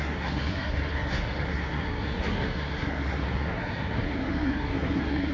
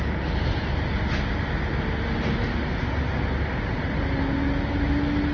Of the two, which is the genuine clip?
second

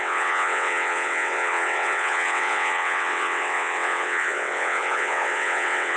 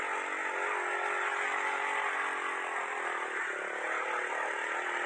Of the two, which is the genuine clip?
second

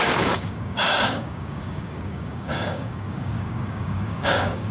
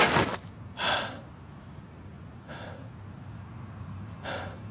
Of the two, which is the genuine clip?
second